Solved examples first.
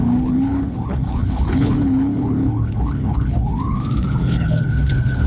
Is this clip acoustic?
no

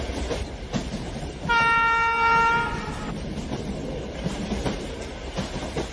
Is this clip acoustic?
no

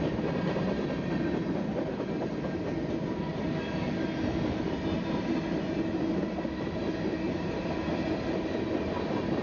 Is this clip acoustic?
yes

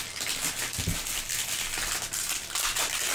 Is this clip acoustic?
yes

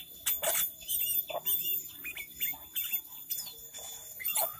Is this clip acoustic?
yes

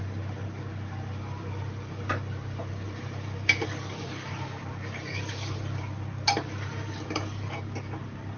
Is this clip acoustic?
yes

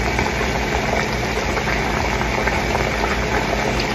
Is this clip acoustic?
yes